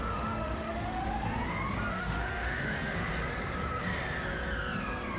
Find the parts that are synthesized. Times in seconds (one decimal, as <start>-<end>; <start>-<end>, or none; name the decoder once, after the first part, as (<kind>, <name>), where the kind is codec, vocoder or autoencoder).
0.0-1.0 (autoencoder, DAC-VAE); 1.9-3.1